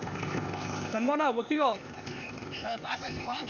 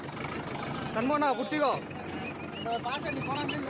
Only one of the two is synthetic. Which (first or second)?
first